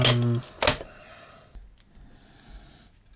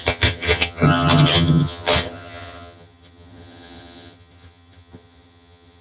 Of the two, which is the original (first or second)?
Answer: first